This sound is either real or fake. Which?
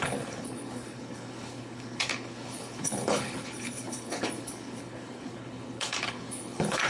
fake